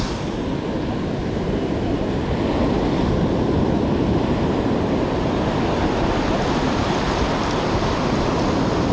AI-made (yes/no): no